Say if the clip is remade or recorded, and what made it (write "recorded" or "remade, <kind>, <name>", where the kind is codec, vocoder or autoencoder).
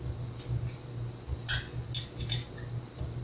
recorded